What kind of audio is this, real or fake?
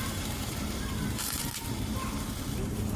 fake